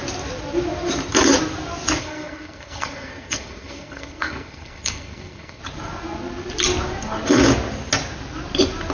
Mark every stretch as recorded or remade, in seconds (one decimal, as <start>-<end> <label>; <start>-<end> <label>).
0.0-2.0 recorded; 2.0-5.6 remade; 5.6-8.9 recorded